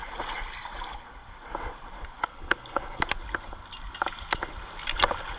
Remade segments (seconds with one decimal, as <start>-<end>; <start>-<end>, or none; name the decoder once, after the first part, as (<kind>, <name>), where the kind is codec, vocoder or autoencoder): 2.3-3.0 (codec, HILCodec)